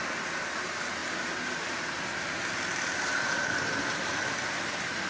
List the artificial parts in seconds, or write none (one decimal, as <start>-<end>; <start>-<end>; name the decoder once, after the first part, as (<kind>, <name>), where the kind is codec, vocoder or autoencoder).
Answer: none